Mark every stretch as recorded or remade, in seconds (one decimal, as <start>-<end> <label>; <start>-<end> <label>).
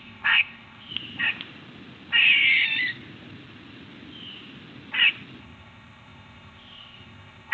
0.0-0.9 remade; 0.9-5.4 recorded; 5.4-7.5 remade